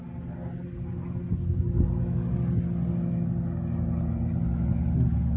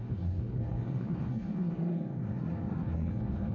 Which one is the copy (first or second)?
second